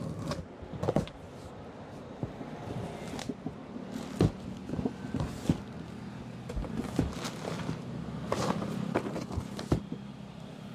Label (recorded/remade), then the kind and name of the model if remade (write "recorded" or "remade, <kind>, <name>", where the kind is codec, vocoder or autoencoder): recorded